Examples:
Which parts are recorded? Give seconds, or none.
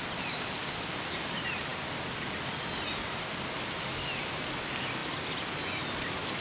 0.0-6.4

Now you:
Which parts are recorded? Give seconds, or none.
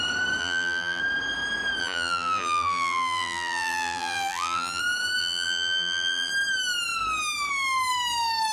0.0-0.4; 1.0-1.8; 4.8-5.2; 6.3-8.5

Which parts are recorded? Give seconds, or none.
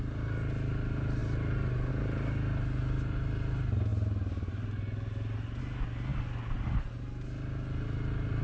0.0-8.4